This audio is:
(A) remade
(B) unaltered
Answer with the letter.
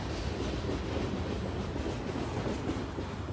B